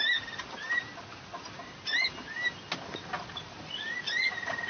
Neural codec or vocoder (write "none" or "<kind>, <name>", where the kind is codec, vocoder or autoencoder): none